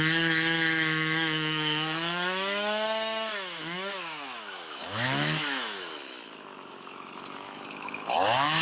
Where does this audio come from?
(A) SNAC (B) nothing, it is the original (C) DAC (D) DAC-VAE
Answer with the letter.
D